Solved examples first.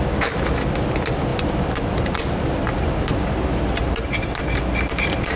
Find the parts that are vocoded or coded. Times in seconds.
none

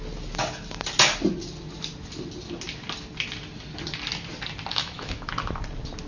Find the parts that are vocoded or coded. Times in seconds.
4.7-5.3 (autoencoder, DAC-VAE)

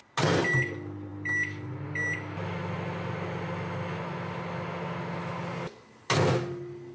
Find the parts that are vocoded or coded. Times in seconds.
none